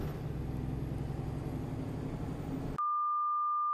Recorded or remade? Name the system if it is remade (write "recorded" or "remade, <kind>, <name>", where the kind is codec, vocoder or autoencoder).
recorded